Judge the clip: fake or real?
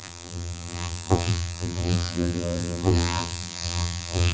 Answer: fake